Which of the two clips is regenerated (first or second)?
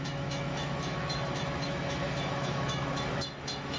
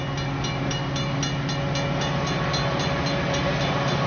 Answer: first